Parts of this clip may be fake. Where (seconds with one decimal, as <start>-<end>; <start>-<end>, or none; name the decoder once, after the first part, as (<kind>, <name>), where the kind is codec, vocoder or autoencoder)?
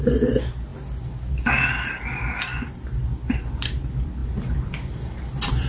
none